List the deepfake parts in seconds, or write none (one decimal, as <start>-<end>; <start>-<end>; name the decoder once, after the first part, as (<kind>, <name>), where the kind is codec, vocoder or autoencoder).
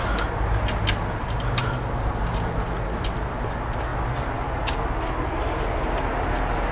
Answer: none